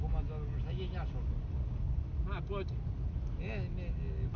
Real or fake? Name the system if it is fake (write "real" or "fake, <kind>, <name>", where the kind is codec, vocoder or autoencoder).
real